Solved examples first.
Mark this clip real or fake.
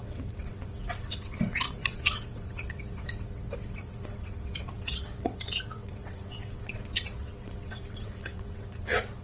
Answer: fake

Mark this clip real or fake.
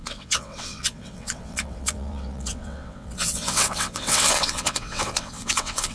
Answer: fake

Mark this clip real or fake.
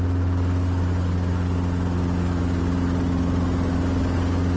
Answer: real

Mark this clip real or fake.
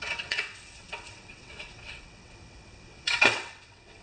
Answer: fake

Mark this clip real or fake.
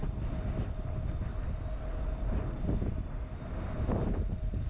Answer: real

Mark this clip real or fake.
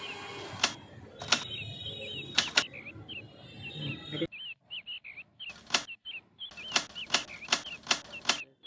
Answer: real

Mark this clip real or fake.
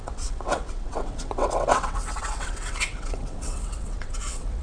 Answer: fake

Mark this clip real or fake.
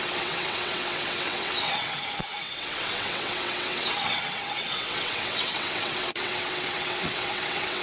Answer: fake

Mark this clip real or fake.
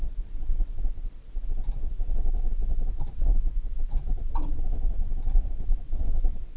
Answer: fake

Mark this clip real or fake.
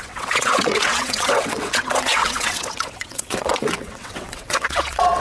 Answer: fake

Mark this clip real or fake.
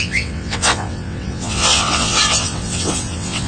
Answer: fake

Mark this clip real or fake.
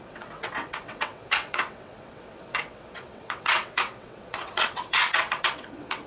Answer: fake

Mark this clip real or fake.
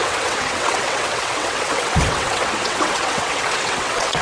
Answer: fake